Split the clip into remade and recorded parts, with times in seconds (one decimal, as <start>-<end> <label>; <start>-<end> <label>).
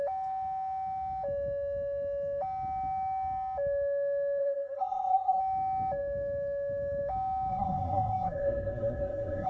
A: 0.0-4.4 recorded; 4.4-5.4 remade; 5.4-7.5 recorded; 7.5-9.5 remade